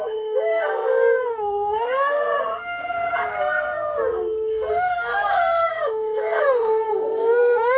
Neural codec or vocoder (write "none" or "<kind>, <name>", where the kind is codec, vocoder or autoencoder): codec, SNAC